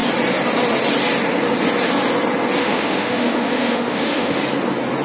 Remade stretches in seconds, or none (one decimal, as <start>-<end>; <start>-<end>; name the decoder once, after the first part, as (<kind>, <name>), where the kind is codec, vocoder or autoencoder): 2.6-4.4 (autoencoder, DAC-VAE)